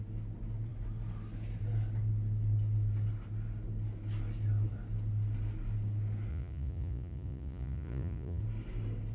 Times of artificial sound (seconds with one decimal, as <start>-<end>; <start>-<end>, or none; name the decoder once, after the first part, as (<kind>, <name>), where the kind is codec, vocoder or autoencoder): 6.3-8.4 (vocoder, Vocos)